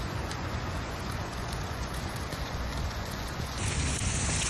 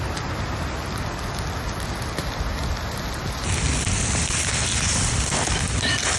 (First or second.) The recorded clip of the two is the second